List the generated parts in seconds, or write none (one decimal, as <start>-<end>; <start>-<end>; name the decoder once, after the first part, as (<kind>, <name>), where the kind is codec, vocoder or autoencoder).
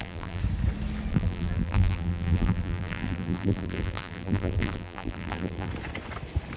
0.0-0.4 (vocoder, BigVGAN v2); 1.1-5.7